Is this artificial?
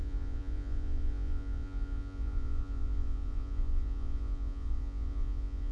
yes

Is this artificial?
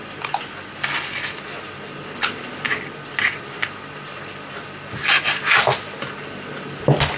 no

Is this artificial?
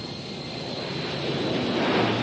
no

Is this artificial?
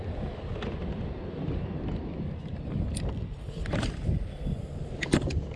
no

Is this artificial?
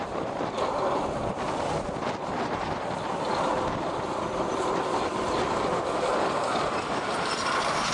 no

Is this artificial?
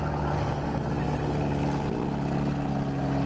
no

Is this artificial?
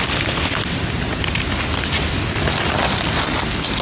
no